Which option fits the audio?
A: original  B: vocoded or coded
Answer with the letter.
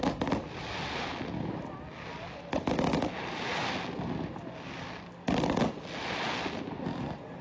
A